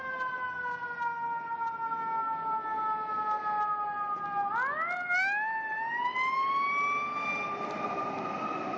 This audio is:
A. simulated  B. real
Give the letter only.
B